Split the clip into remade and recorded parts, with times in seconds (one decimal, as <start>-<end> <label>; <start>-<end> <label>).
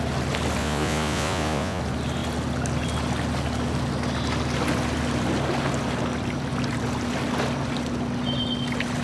0.0-0.6 recorded; 0.6-1.8 remade; 1.8-9.0 recorded